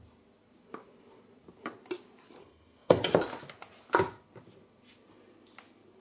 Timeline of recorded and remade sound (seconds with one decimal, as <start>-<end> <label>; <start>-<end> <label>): 0.0-2.4 recorded; 2.4-3.0 remade; 3.0-6.0 recorded